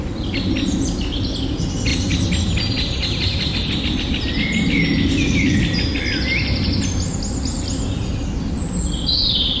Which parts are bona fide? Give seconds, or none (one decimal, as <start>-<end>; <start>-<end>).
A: 0.0-1.9; 4.3-9.6